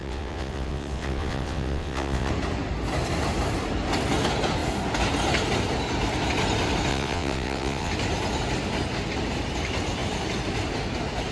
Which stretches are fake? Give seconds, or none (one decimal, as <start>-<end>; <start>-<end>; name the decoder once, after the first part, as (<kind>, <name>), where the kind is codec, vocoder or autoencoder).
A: 0.0-2.3 (vocoder, WaveNeXt); 6.9-7.9